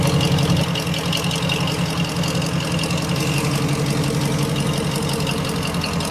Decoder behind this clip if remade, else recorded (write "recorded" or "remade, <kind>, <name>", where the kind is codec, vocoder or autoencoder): recorded